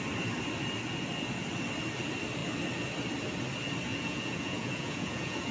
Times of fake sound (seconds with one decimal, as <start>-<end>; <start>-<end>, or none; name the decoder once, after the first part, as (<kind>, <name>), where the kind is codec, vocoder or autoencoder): 3.9-5.5 (vocoder, Vocos)